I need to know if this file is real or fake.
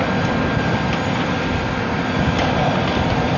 real